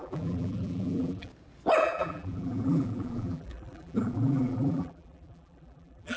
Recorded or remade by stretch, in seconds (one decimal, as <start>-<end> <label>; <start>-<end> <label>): 0.0-1.3 remade; 1.3-1.8 recorded; 1.8-6.2 remade